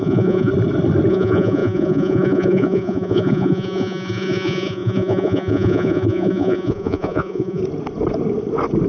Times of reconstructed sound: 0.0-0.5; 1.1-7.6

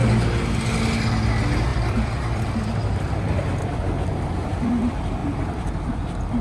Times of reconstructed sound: 1.1-6.4

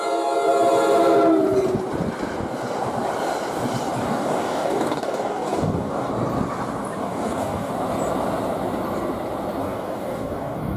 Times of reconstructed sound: 4.0-6.1; 7.0-7.7; 9.6-10.8

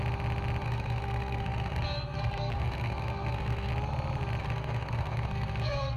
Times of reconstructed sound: 0.6-3.7; 4.4-6.0

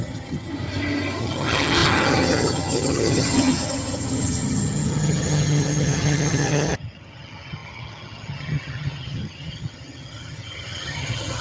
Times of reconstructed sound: 0.0-0.5; 1.2-11.4

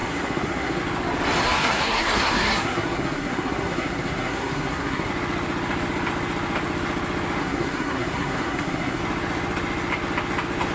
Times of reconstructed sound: 0.0-0.8; 1.4-5.1; 7.4-9.0

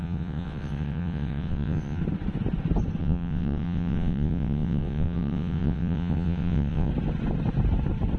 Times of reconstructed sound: 0.0-2.0; 3.0-6.9

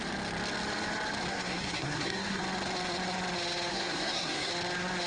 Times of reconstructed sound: 1.3-2.4; 3.7-4.5